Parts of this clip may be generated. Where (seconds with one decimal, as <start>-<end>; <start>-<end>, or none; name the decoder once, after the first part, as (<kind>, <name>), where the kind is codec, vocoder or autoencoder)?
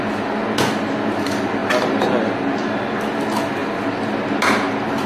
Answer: none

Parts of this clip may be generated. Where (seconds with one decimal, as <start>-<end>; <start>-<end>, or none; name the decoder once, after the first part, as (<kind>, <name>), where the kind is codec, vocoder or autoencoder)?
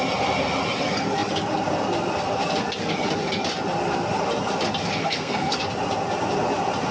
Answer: 5.0-5.6 (codec, SNAC)